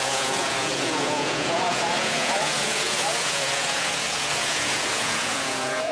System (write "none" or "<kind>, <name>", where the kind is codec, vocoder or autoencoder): vocoder, Vocos